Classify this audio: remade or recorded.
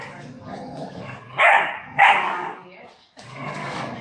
remade